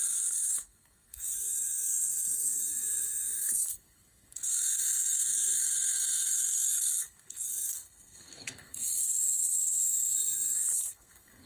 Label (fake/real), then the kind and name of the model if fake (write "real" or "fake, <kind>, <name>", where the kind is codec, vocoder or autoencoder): fake, codec, SNAC